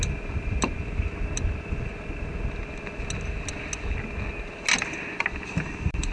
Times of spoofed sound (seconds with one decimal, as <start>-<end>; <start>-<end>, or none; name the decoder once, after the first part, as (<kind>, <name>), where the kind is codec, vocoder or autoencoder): 0.0-1.9 (vocoder, BigVGAN v2); 5.6-6.1